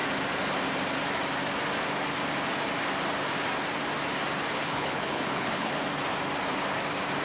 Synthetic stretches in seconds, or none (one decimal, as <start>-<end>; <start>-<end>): 4.6-5.7